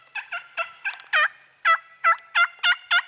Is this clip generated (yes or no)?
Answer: no